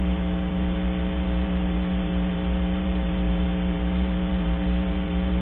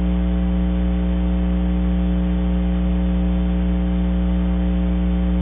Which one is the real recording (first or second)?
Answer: second